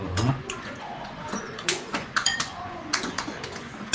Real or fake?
fake